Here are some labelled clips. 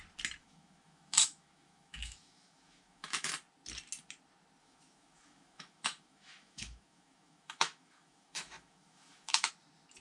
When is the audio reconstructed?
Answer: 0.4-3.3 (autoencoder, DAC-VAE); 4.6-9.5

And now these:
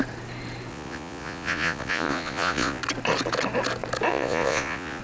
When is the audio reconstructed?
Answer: 0.7-2.8 (vocoder, Vocos); 4.1-5.0

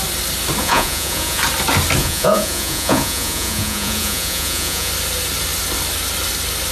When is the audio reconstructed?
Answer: 0.6-1.4 (vocoder, Vocos); 2.0-4.9